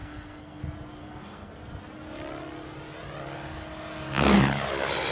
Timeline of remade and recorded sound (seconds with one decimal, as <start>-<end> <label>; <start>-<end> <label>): 0.0-0.6 remade; 0.6-1.0 recorded; 1.0-1.5 remade; 1.5-5.1 recorded